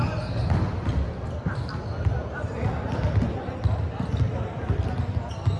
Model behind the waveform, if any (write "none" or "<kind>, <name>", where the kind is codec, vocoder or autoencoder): none